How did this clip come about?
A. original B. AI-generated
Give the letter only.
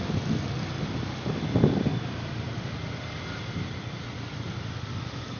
A